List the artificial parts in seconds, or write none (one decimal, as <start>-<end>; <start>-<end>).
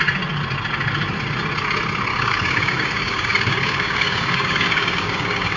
2.1-5.6